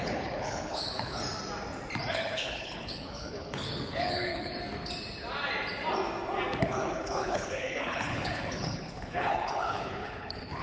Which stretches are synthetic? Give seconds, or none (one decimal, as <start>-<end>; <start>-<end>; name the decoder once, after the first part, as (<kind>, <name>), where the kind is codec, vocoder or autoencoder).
0.0-1.2 (codec, HILCodec); 2.1-4.5; 6.6-10.6